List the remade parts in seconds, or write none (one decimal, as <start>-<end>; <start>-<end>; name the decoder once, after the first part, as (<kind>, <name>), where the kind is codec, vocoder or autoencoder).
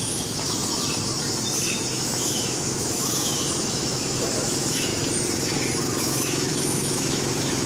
0.0-0.6 (autoencoder, DAC-VAE); 1.9-4.9; 6.0-7.7